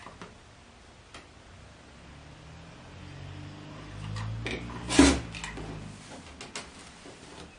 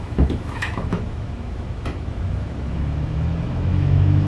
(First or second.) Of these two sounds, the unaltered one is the first